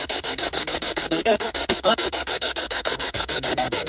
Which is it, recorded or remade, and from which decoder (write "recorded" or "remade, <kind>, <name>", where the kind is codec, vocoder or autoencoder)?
remade, codec, SNAC